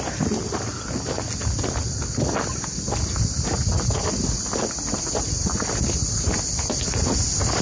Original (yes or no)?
yes